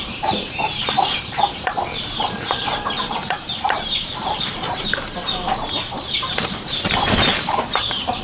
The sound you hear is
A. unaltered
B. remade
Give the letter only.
B